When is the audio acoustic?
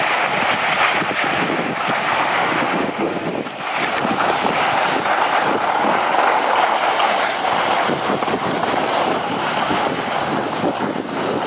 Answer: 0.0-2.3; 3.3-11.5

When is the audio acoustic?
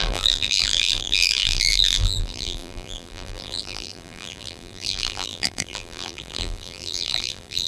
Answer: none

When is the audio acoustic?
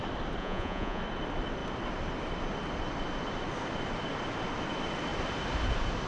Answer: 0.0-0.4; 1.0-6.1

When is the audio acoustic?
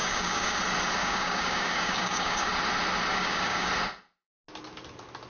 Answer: 0.6-1.0; 2.5-3.1; 3.7-5.3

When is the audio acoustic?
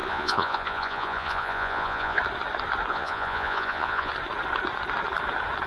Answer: 2.2-2.9; 4.1-5.7